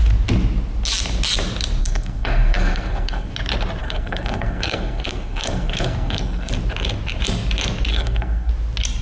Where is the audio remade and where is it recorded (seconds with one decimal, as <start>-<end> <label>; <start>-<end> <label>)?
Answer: 0.0-1.8 recorded; 1.8-3.3 remade; 3.3-3.8 recorded; 3.8-6.5 remade; 6.5-7.9 recorded; 7.9-8.5 remade; 8.5-9.0 recorded